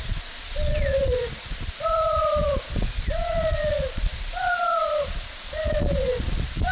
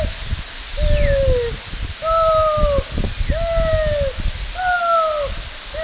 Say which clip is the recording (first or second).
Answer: second